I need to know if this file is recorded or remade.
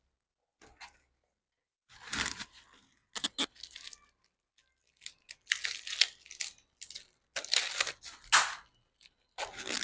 recorded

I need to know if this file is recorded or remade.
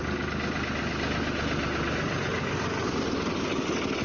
recorded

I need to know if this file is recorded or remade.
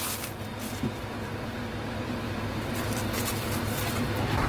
recorded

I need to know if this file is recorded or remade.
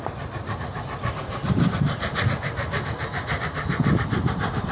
recorded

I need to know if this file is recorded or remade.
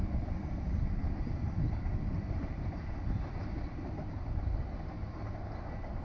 recorded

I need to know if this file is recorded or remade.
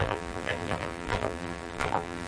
remade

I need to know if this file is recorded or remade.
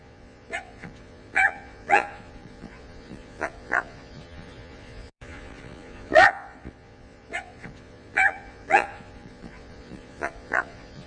remade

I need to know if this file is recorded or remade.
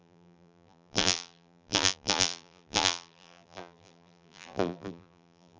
remade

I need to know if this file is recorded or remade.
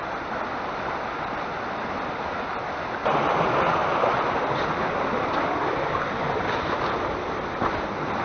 recorded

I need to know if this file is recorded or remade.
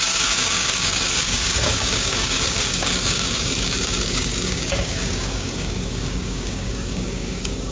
remade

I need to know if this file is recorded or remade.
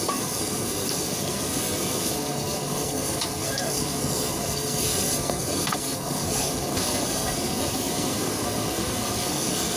remade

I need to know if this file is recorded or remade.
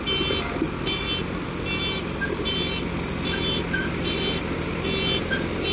recorded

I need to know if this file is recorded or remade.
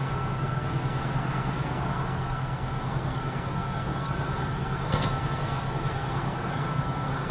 remade